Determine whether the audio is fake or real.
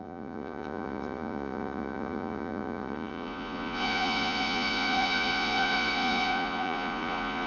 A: fake